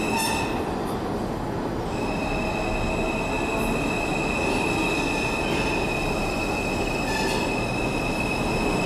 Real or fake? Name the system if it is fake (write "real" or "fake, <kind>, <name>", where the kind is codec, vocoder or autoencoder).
real